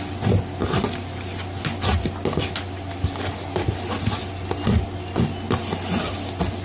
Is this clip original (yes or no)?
yes